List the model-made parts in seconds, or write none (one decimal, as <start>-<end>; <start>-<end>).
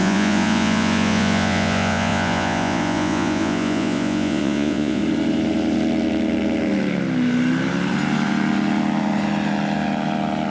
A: 0.0-5.0